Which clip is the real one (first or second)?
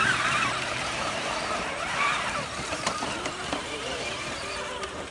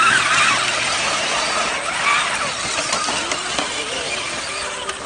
second